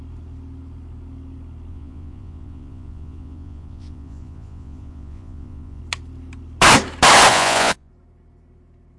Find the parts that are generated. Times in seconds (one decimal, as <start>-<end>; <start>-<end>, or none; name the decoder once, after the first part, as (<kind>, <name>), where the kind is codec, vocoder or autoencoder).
1.7-5.8 (vocoder, Vocos); 7.3-7.9